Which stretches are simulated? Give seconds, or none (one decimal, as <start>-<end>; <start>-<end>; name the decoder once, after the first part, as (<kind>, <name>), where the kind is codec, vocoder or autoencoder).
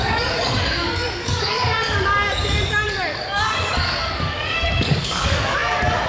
0.0-6.1 (codec, DAC)